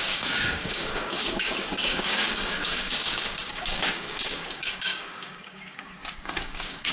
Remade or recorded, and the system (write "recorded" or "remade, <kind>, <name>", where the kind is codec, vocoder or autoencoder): remade, codec, DAC